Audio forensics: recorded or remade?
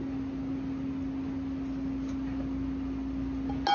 recorded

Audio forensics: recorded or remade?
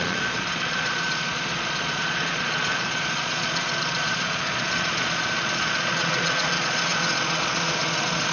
remade